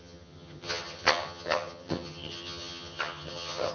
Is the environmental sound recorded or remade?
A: remade